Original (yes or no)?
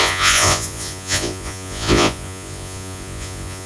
no